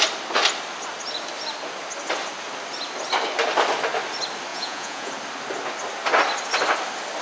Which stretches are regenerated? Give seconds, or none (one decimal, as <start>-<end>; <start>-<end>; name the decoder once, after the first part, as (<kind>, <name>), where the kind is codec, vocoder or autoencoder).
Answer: 4.5-5.1 (vocoder, Vocos)